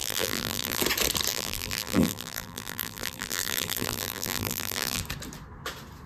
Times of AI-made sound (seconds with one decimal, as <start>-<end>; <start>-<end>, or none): 0.0-0.8; 1.3-5.0